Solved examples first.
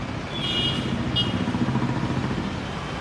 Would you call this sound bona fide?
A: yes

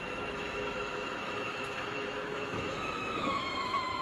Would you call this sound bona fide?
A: no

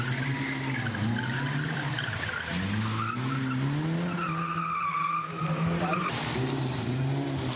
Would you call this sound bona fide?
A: yes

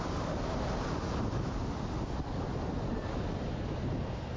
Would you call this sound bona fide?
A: yes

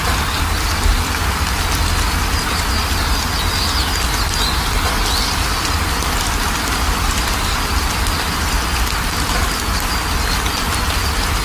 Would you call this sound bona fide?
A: yes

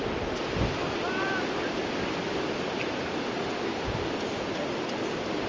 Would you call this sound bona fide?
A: yes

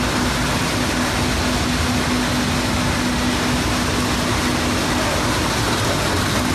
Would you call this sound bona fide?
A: yes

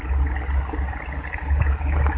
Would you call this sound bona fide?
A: yes